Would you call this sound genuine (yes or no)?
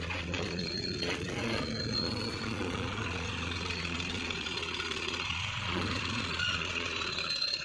no